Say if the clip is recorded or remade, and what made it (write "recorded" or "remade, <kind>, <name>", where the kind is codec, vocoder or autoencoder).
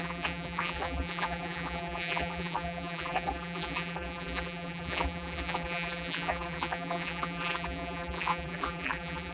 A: remade, vocoder, BigVGAN v2